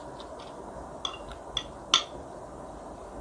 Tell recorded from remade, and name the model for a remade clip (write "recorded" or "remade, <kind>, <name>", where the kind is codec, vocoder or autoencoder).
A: recorded